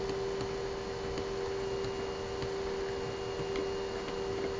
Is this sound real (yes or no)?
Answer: yes